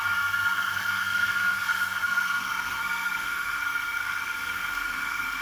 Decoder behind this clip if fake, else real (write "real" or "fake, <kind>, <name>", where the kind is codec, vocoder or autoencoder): fake, codec, SNAC